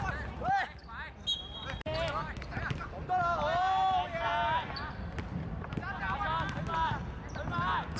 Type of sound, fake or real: real